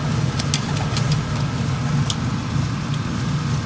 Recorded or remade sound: recorded